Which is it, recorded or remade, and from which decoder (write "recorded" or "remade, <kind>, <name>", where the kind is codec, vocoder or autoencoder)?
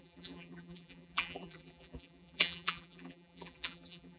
remade, vocoder, BigVGAN v2